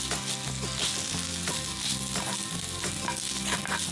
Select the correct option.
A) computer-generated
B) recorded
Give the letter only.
B